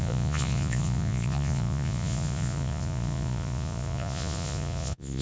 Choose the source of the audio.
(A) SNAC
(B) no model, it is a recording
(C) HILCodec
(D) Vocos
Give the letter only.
D